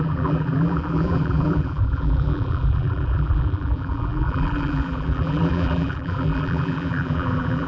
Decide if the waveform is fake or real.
fake